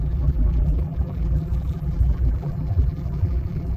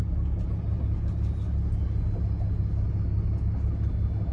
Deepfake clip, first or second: first